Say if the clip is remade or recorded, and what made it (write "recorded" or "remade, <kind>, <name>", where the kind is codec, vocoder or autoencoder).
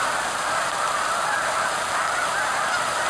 remade, vocoder, BigVGAN v2